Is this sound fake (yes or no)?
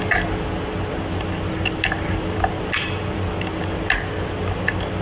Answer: no